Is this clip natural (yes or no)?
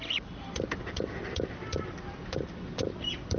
yes